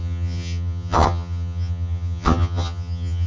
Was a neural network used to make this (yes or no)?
yes